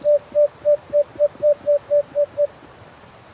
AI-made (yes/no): yes